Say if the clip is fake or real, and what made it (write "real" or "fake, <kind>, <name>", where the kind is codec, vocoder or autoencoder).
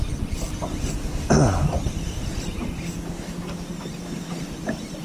real